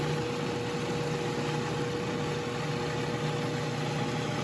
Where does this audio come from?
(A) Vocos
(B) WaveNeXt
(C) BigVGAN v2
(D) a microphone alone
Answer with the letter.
D